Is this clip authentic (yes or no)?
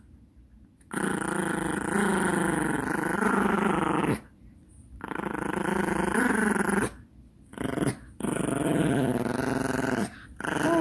yes